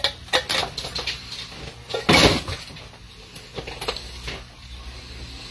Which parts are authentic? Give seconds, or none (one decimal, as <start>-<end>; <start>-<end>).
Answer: 0.0-5.5

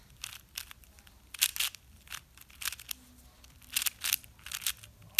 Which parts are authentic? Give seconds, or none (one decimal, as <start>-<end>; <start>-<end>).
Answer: 0.0-5.2

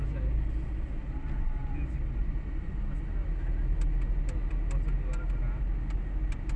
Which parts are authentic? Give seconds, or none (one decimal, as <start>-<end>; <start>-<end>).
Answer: 0.0-6.6

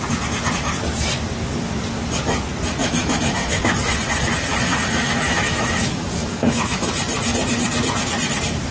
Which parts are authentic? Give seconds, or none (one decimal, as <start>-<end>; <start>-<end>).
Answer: 0.0-2.8; 3.7-4.5; 6.9-8.7

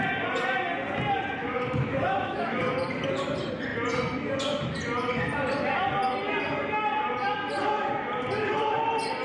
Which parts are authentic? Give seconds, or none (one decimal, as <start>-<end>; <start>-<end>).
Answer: 0.0-1.4; 2.6-9.2

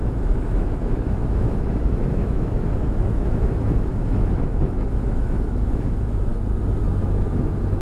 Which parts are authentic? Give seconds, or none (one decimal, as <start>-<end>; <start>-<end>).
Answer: 6.3-7.0

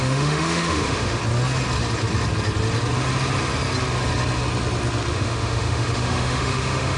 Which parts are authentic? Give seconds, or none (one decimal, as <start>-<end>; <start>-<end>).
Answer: 1.2-5.1